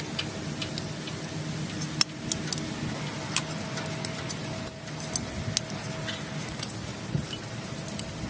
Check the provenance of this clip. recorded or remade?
recorded